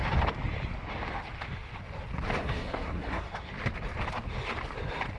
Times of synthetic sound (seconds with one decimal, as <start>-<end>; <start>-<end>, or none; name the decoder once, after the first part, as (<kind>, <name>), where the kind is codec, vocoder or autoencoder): 2.4-3.5 (codec, SNAC)